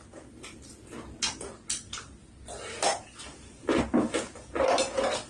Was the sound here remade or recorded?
recorded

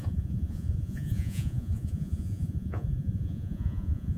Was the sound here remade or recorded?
remade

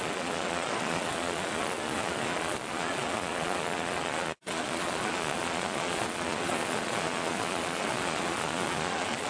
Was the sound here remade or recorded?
remade